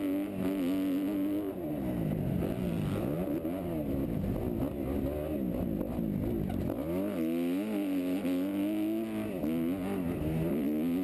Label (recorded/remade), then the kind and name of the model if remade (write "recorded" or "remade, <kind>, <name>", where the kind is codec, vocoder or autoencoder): recorded